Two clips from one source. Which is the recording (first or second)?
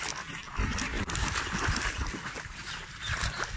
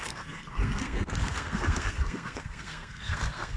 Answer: first